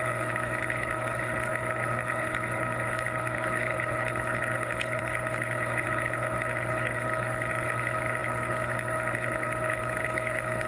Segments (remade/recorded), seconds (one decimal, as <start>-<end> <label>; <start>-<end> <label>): 0.0-10.7 remade